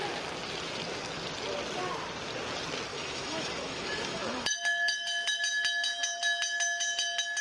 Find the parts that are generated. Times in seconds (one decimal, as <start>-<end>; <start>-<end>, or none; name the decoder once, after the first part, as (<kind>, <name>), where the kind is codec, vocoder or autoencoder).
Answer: 2.9-5.4 (autoencoder, DAC-VAE)